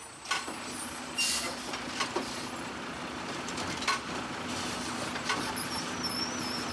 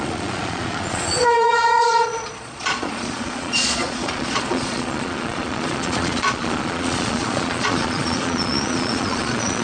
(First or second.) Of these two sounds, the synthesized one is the second